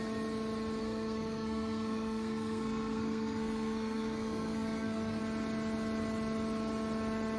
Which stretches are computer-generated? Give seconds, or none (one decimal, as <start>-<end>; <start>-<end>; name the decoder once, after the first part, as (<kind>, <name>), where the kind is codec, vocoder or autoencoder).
0.8-5.2 (codec, SNAC)